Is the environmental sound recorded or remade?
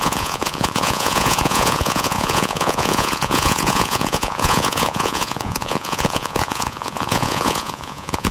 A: remade